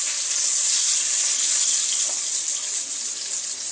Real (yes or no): yes